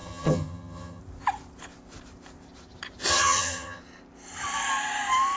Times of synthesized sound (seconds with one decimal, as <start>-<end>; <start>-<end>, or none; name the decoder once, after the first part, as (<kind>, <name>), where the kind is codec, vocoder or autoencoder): 0.0-1.0 (vocoder, HiFi-GAN); 3.1-3.8

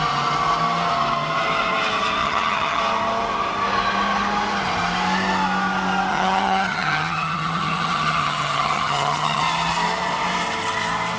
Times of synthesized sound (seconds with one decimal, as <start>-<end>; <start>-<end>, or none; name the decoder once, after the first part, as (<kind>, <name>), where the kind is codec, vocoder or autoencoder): 2.2-2.8 (vocoder, HiFi-GAN); 6.1-9.4

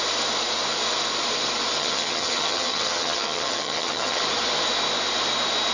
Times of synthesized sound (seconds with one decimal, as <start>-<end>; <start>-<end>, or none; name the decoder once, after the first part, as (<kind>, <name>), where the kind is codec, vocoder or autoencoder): 1.8-4.2 (vocoder, HiFi-GAN)